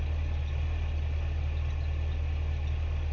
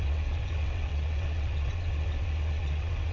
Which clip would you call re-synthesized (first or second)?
second